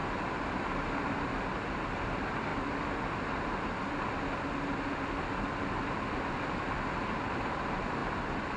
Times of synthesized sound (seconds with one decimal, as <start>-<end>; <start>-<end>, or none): 1.2-2.5; 5.5-8.6